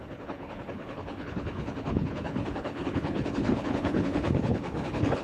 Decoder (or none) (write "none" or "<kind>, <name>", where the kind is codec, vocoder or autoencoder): codec, HILCodec